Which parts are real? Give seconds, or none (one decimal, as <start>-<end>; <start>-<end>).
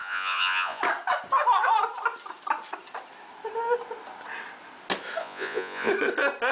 0.8-5.2; 5.9-6.5